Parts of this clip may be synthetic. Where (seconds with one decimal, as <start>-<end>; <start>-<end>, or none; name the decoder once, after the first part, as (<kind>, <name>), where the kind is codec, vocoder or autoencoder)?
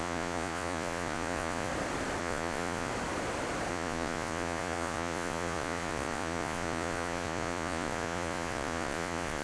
0.0-1.7 (vocoder, Vocos); 2.2-2.9; 3.7-9.4